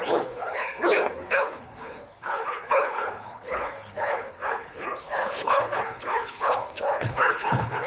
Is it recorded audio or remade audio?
remade